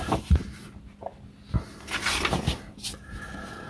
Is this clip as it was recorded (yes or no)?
yes